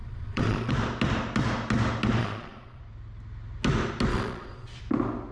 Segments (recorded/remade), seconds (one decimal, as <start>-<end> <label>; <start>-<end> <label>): 0.0-0.7 remade; 0.7-2.2 recorded; 2.2-2.8 remade; 2.8-4.1 recorded; 4.1-4.8 remade; 4.8-5.3 recorded